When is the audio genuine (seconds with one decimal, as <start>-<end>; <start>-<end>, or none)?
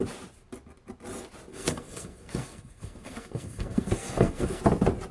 0.0-1.5; 4.6-5.1